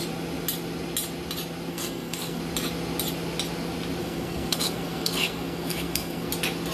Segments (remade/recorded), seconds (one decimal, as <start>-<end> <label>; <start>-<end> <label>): 0.0-1.7 recorded; 1.7-2.4 remade; 2.4-4.0 recorded; 4.0-6.3 remade; 6.3-6.7 recorded